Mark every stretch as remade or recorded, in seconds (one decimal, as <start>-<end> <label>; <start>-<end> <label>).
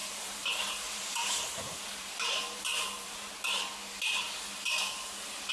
0.0-3.3 remade; 3.3-5.5 recorded